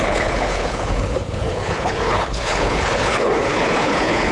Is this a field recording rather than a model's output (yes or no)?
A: no